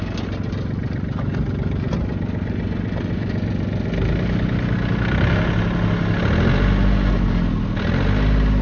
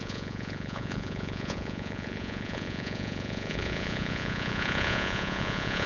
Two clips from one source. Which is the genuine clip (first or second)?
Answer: first